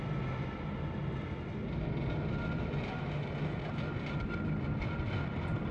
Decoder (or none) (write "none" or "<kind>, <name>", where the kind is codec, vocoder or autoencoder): none